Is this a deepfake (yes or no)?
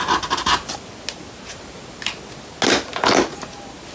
no